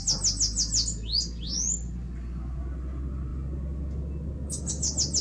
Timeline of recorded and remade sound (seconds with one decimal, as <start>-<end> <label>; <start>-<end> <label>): 0.0-5.2 recorded